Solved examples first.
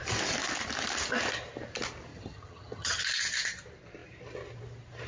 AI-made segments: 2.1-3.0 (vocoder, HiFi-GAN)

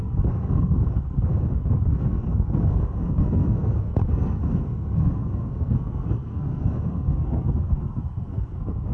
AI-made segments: 0.0-1.3 (codec, SNAC); 1.9-8.9

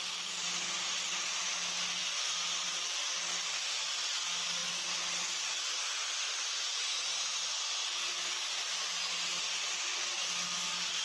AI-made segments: none

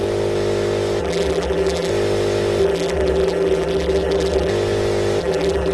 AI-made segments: 1.0-1.9 (vocoder, BigVGAN v2); 2.6-4.5; 5.2-5.7

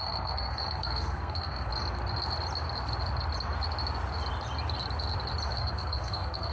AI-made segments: 0.0-1.7 (codec, SNAC); 5.6-6.5

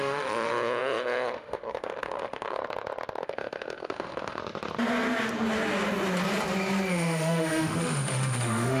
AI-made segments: 0.0-2.6 (autoencoder, DAC-VAE); 3.2-4.4; 6.9-8.8